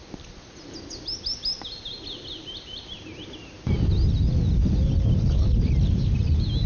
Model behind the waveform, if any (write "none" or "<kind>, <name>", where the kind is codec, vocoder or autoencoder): none